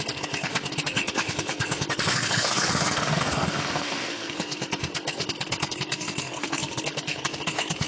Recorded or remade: remade